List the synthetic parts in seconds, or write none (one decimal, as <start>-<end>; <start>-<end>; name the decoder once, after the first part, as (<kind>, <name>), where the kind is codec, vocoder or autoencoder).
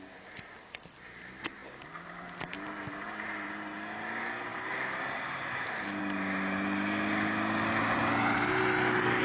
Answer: 4.5-6.0 (vocoder, BigVGAN v2)